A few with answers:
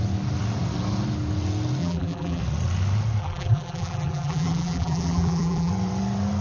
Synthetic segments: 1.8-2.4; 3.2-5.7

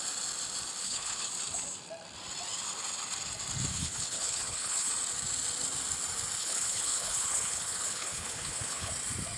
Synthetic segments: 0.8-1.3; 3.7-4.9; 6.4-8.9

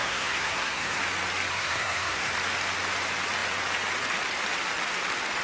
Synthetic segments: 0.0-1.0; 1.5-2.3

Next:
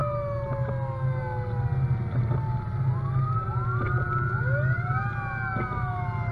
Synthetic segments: none

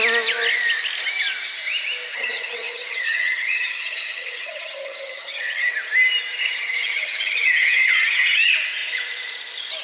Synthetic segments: 2.1-5.7; 6.4-8.4

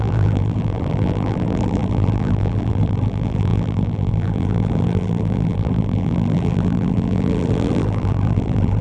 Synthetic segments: 0.0-8.8

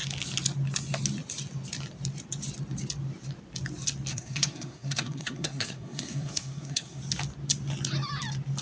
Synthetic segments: 4.1-7.0